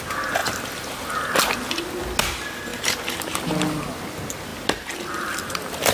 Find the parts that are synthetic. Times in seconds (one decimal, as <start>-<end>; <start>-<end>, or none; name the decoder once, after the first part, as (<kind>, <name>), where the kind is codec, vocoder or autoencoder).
none